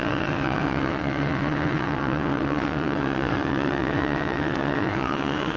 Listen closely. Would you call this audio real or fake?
fake